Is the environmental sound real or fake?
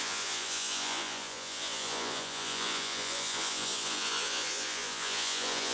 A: fake